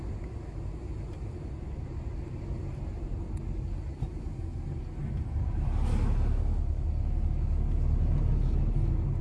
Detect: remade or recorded recorded